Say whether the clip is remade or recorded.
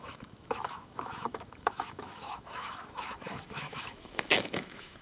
remade